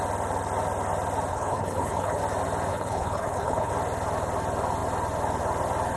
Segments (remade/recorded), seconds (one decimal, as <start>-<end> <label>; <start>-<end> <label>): 0.0-1.3 recorded; 1.3-2.2 remade; 2.2-2.7 recorded; 2.7-3.7 remade; 3.7-6.0 recorded